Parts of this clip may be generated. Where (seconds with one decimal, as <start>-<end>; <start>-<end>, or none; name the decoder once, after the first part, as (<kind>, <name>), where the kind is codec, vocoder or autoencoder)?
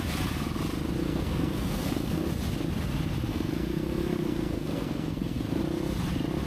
1.0-2.3 (codec, SNAC); 3.3-5.6